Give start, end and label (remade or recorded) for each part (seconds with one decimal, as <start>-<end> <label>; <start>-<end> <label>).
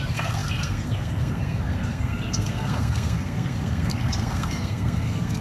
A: 0.0-5.4 remade